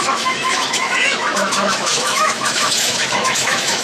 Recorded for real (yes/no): no